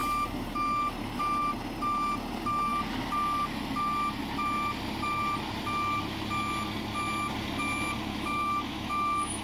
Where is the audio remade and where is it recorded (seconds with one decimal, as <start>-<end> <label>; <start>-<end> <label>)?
0.0-8.1 recorded; 8.1-9.4 remade